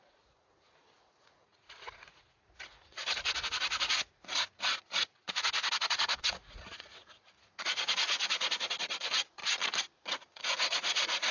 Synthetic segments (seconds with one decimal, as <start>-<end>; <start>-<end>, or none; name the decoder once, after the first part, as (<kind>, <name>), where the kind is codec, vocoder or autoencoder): 0.0-9.4 (vocoder, Vocos); 10.1-11.3